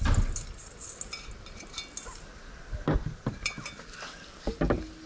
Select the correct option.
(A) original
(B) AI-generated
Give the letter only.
A